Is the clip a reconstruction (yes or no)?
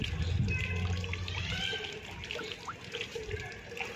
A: no